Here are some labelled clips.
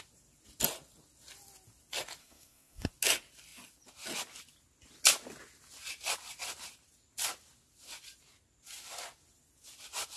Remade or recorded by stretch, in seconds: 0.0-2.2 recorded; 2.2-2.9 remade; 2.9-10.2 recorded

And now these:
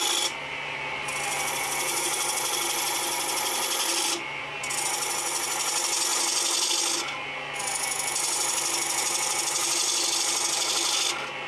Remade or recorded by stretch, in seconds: 0.0-11.5 recorded

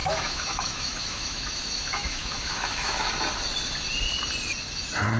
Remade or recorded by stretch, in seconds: 0.0-3.1 remade; 3.1-5.2 recorded

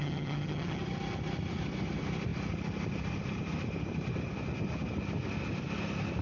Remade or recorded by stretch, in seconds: 0.0-0.8 remade; 0.8-6.2 recorded